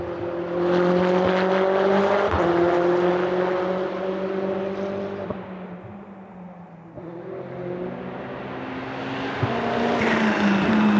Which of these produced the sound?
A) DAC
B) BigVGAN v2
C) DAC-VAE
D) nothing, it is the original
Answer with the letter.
D